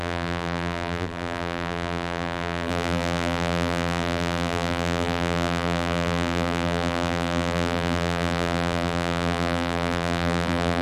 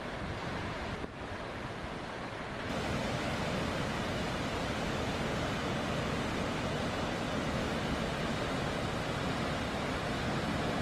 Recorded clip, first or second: second